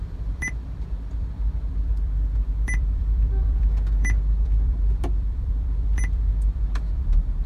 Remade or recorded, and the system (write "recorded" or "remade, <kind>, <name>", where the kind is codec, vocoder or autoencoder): remade, vocoder, BigVGAN v2